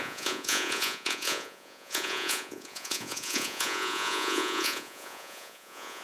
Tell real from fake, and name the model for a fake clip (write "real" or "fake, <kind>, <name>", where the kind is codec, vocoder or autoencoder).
fake, vocoder, Vocos